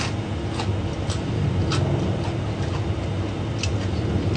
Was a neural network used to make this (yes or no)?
no